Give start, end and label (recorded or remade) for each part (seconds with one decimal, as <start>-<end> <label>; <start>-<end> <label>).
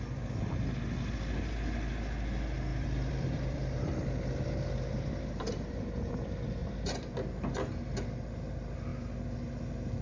0.0-2.7 recorded; 2.7-6.1 remade; 6.1-6.6 recorded; 6.6-7.1 remade; 7.1-10.0 recorded